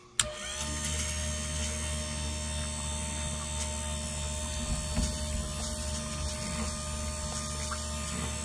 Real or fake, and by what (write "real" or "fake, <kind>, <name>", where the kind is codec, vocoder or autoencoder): real